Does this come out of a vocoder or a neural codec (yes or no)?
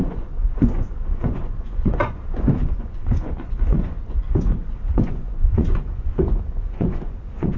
yes